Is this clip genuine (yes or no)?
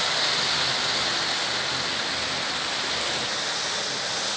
yes